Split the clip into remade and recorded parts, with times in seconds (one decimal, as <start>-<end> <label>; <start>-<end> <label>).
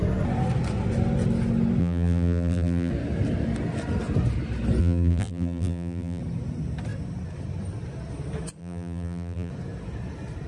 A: 0.0-1.8 recorded; 1.8-2.9 remade; 2.9-4.8 recorded; 4.8-6.2 remade; 6.2-8.6 recorded; 8.6-9.5 remade; 9.5-10.5 recorded